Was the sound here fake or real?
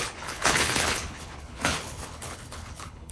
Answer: fake